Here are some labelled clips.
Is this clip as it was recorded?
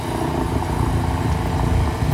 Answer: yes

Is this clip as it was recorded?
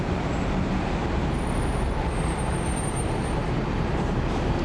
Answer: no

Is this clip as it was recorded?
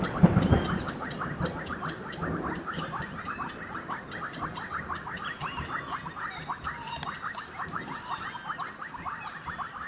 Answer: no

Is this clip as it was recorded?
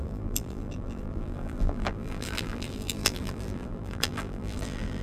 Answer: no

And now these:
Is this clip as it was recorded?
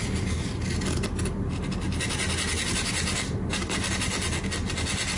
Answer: yes